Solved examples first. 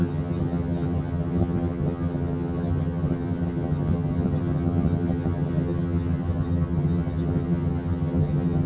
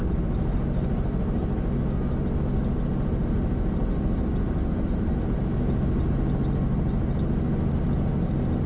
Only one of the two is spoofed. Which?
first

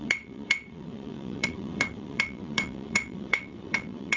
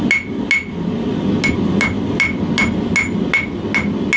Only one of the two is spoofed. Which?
first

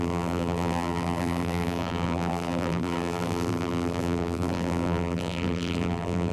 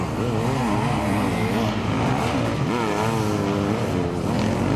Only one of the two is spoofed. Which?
first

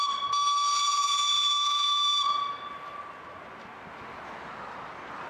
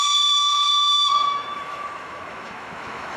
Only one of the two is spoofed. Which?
second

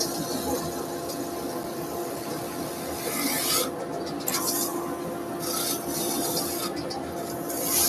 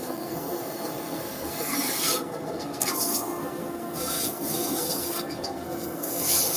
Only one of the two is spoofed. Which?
second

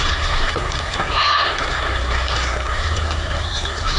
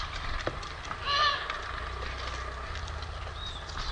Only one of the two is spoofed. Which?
first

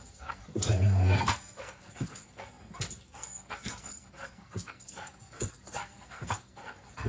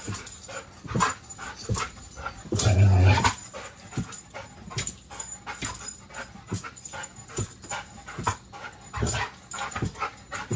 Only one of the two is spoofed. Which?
first